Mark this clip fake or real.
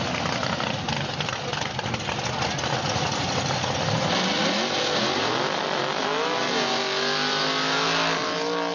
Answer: real